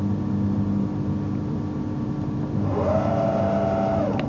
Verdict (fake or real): real